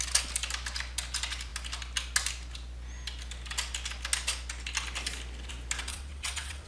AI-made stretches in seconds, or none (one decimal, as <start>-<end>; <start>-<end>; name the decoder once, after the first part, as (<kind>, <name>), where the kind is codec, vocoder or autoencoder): 5.9-6.7 (vocoder, WaveNeXt)